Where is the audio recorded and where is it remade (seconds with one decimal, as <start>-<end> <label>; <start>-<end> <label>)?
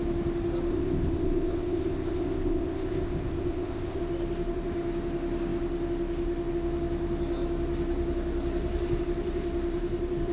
0.0-0.7 recorded; 0.7-4.0 remade; 4.0-10.3 recorded